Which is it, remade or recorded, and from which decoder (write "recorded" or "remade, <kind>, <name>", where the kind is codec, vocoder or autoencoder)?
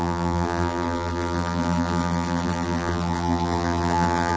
remade, vocoder, BigVGAN v2